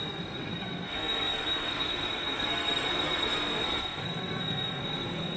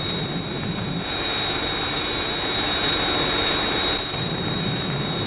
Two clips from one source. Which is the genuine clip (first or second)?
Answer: second